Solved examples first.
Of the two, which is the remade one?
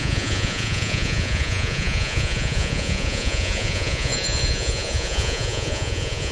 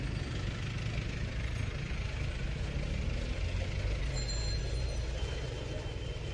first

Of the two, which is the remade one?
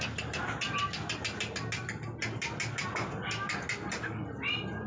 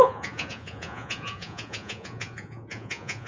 second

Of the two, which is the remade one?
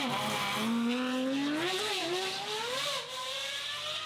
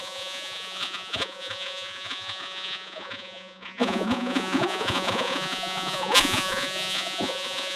second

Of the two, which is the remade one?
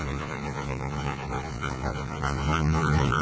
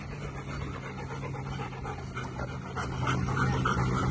first